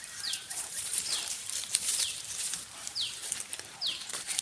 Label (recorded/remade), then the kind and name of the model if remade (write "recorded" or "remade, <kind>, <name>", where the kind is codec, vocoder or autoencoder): remade, vocoder, BigVGAN v2